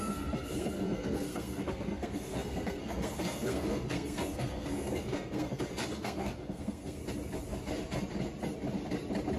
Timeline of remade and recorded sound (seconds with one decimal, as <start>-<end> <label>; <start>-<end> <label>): 0.0-7.0 remade; 7.0-9.4 recorded